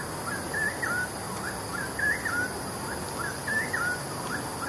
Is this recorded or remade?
recorded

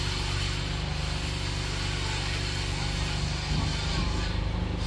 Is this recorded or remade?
recorded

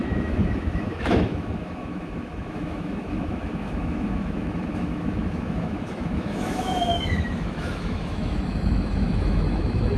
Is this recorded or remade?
remade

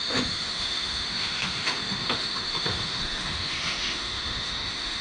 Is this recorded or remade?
remade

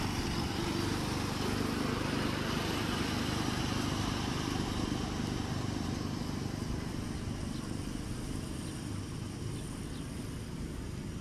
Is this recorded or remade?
recorded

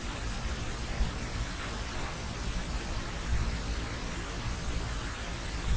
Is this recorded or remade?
recorded